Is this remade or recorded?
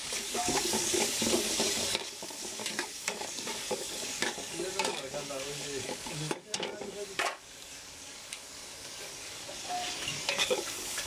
remade